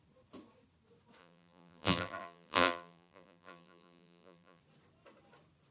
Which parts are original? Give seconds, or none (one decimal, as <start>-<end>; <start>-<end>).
0.0-1.2; 4.6-5.7